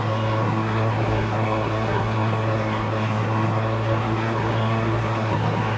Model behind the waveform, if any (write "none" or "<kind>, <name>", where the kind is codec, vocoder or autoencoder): codec, SNAC